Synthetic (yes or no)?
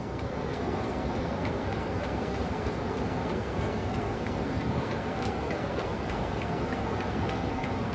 yes